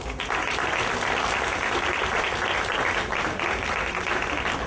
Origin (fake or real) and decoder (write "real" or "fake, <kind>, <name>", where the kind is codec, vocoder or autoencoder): real